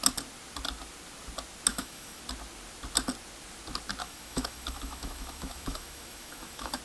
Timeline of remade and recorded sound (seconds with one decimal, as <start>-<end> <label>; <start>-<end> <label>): 0.0-1.7 recorded; 1.7-2.2 remade; 2.2-4.0 recorded; 4.0-6.8 remade